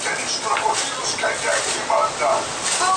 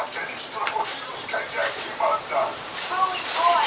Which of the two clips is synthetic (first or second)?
second